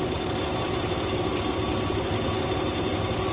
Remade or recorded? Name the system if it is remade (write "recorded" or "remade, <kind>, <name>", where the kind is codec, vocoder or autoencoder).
recorded